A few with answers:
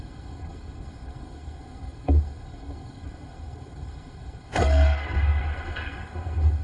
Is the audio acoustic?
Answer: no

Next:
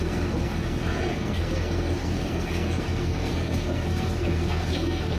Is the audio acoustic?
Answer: no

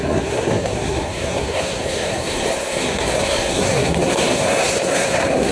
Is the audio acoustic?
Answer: no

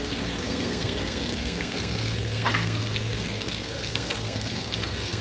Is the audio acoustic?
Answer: no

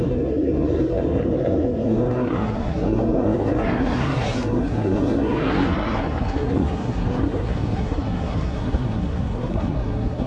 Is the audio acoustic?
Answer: no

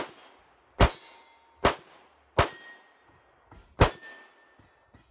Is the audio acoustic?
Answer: yes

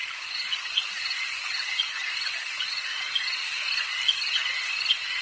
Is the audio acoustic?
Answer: yes